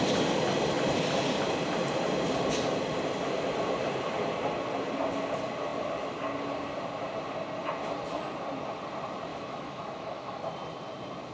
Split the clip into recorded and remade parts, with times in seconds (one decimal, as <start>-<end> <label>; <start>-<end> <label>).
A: 0.0-9.3 recorded; 9.3-10.4 remade; 10.4-11.3 recorded